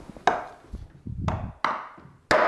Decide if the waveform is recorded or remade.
recorded